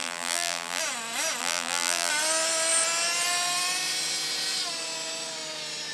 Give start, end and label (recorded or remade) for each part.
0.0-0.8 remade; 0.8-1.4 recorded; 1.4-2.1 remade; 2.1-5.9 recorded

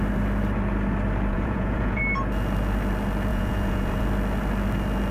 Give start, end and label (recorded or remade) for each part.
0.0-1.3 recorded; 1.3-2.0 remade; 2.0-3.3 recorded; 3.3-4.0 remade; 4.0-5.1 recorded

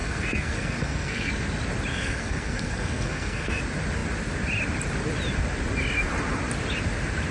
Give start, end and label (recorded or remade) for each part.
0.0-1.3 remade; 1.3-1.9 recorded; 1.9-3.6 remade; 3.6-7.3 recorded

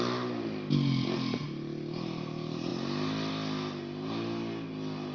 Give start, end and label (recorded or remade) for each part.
0.0-5.1 recorded

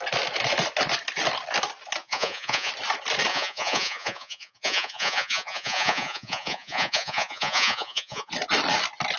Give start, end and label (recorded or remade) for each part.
0.0-2.0 recorded; 2.0-2.7 remade; 2.7-3.3 recorded; 3.3-8.3 remade; 8.3-9.2 recorded

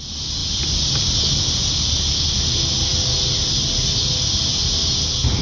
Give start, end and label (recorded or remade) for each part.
0.0-5.4 recorded

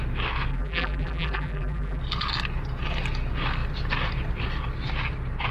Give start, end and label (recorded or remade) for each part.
0.0-0.5 recorded; 0.5-2.0 remade; 2.0-5.5 recorded